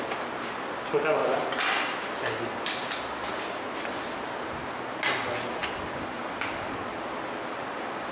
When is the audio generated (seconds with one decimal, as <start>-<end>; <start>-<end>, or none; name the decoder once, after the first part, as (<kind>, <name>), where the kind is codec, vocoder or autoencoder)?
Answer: none